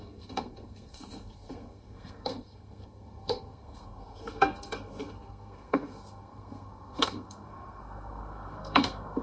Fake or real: fake